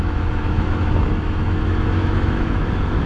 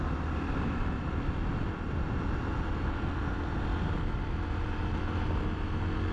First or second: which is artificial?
first